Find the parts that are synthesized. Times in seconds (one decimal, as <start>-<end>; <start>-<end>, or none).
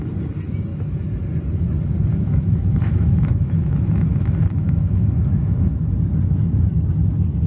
2.1-5.7